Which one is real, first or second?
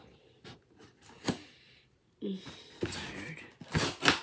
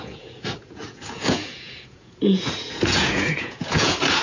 first